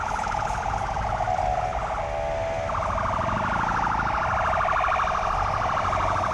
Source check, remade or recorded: recorded